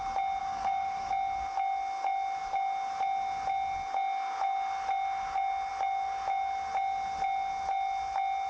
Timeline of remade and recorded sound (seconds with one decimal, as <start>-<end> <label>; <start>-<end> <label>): 0.0-0.4 recorded; 0.4-1.1 remade; 1.1-8.5 recorded